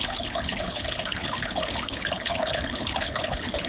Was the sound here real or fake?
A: fake